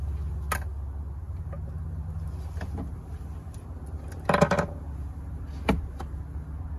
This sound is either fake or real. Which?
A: real